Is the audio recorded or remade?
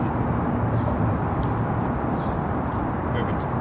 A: recorded